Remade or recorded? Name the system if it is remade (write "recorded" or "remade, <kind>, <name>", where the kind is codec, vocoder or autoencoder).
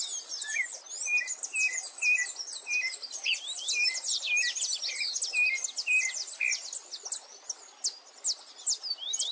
recorded